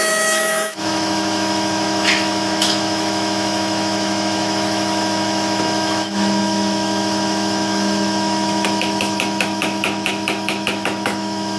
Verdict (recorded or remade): remade